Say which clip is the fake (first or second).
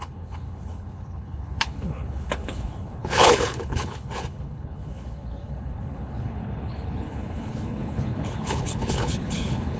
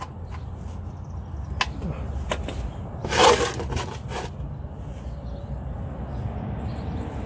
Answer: first